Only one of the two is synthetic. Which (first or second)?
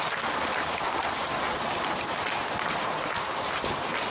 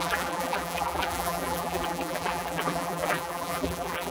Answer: second